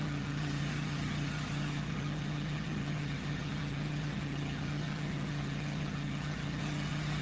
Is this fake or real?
fake